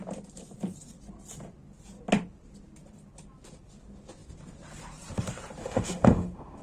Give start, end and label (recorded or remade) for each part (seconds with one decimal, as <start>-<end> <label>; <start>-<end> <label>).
0.0-5.6 recorded; 5.6-6.6 remade